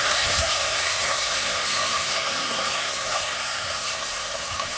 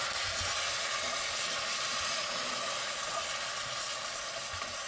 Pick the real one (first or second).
second